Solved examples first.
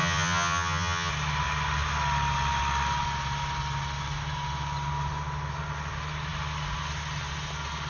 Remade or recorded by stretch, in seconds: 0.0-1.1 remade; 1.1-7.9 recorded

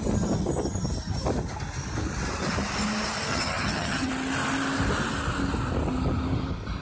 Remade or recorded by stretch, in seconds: 0.0-3.3 recorded; 3.3-4.1 remade; 4.1-6.8 recorded